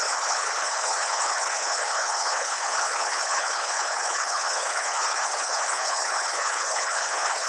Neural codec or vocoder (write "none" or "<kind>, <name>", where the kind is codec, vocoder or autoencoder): codec, HILCodec